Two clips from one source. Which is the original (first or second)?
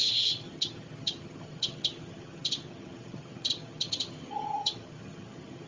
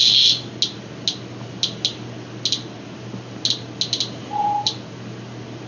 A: second